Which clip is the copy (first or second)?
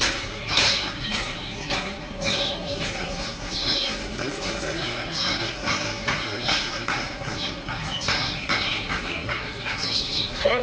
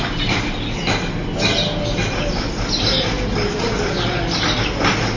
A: first